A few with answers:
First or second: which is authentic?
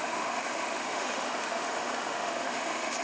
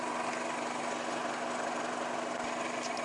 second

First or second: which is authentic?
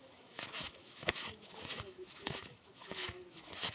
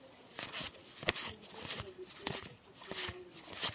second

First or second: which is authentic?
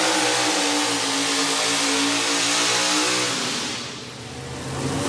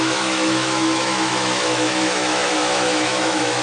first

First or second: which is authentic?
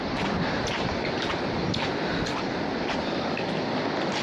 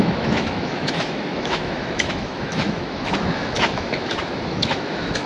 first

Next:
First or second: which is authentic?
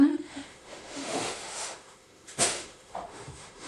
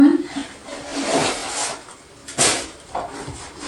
second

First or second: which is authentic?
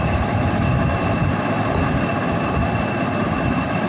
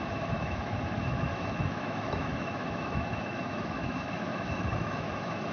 first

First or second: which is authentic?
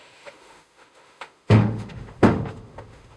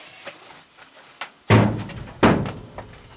second